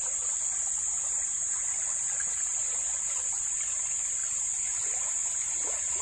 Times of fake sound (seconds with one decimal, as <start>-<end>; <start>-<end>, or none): none